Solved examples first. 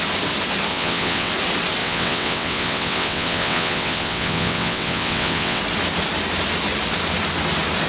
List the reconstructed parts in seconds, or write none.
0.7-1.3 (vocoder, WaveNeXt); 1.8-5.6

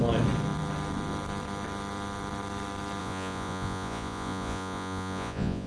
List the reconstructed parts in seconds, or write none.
3.0-5.7 (vocoder, Vocos)

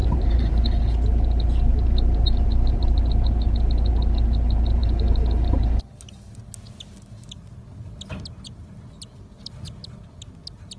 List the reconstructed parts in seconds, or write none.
0.0-0.6 (vocoder, BigVGAN v2); 1.7-3.0

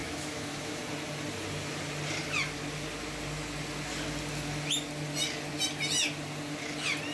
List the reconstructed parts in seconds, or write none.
0.0-0.8 (autoencoder, DAC-VAE)

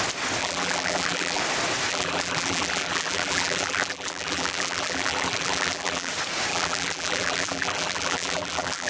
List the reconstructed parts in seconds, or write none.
0.4-1.4 (vocoder, BigVGAN v2); 1.9-6.1; 6.5-8.9

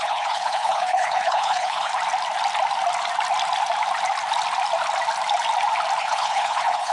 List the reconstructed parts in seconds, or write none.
0.0-1.9 (codec, HILCodec); 6.0-6.9

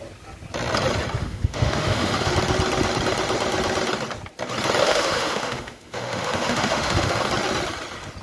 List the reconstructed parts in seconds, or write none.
1.2-2.3 (autoencoder, DAC-VAE); 4.8-7.2